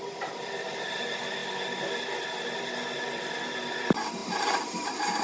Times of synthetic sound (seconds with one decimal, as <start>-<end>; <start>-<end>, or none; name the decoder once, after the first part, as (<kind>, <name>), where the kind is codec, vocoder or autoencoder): none